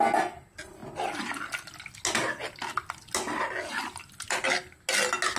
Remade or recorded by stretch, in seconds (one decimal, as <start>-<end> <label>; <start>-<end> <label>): 0.0-5.4 recorded